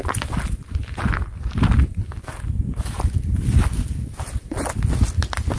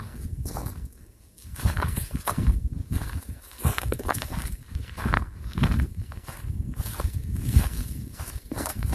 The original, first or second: first